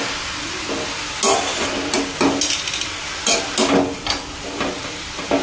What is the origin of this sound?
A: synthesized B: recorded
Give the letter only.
B